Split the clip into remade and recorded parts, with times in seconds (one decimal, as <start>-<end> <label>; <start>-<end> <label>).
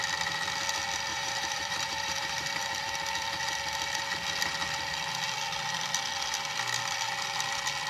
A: 0.0-1.1 recorded; 1.1-2.9 remade; 2.9-7.9 recorded